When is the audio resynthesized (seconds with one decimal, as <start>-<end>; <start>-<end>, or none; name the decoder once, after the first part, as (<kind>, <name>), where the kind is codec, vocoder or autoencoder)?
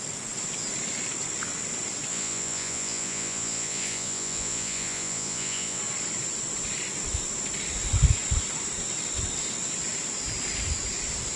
2.1-5.8 (vocoder, Vocos)